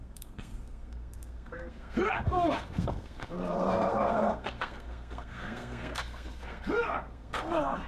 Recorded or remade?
remade